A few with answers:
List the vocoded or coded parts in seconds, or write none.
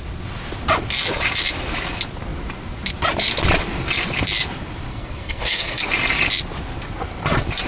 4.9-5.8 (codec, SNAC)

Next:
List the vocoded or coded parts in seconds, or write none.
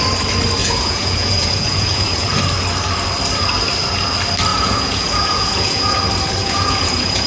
0.6-2.4 (vocoder, Vocos); 4.5-6.0; 6.4-7.3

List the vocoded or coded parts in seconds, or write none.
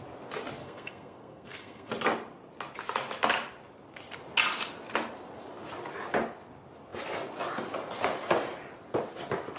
0.6-1.9 (codec, SNAC)